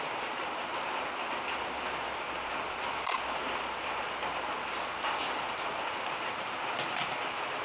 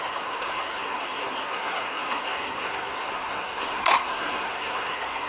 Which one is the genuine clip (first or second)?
first